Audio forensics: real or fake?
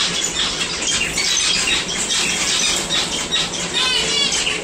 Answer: real